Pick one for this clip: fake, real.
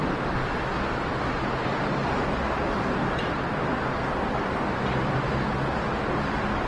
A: real